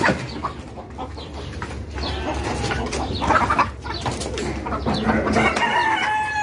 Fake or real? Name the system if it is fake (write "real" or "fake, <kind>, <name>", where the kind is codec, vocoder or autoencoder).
real